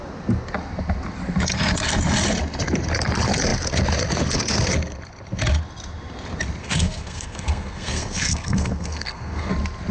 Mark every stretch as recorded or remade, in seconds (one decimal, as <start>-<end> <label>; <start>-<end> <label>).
0.0-6.6 recorded; 6.6-9.5 remade; 9.5-9.9 recorded